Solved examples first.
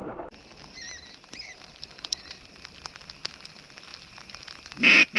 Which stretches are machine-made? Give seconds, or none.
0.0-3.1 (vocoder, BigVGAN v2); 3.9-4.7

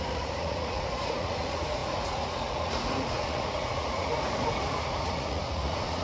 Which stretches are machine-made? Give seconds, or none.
0.0-6.0 (vocoder, Vocos)

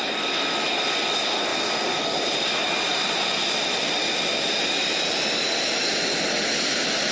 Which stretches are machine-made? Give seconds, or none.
2.9-3.8 (vocoder, BigVGAN v2)

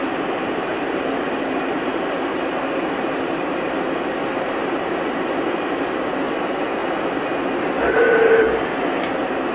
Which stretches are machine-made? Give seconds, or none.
0.0-6.8 (vocoder, BigVGAN v2); 8.0-9.5

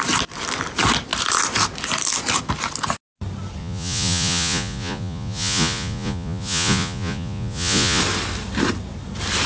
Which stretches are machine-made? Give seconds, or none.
3.6-8.0 (vocoder, Vocos)